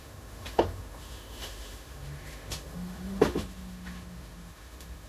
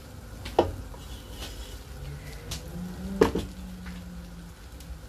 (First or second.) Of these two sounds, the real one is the second